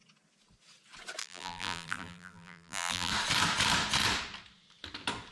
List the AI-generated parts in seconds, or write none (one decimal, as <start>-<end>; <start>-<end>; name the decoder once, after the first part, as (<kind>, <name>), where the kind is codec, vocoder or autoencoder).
1.2-3.1 (vocoder, BigVGAN v2)